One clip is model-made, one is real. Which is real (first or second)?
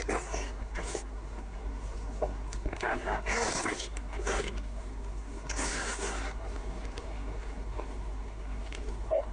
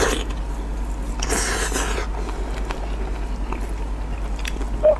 second